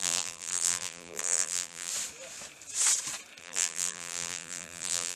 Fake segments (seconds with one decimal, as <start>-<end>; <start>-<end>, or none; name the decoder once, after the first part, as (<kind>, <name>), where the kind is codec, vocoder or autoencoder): 0.0-1.9 (vocoder, BigVGAN v2); 3.4-5.2